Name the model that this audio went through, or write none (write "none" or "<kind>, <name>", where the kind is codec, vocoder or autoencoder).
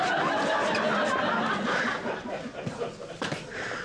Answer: none